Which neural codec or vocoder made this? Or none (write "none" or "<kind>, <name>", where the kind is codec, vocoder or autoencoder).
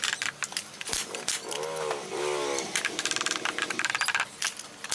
none